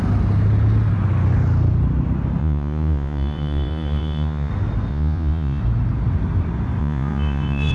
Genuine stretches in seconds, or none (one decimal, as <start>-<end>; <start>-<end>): 0.0-2.4; 4.5-4.9; 5.6-6.8